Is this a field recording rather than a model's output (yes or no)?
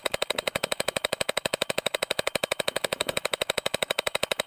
no